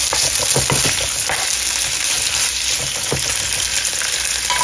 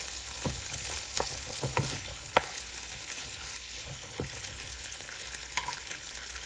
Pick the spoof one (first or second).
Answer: second